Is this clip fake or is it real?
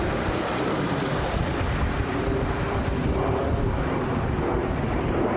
fake